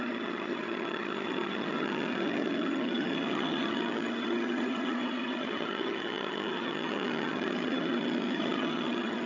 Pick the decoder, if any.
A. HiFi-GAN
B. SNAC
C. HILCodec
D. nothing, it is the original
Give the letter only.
A